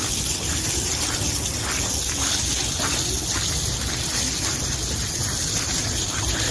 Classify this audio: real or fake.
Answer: real